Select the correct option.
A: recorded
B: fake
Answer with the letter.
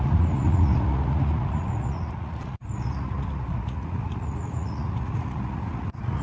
B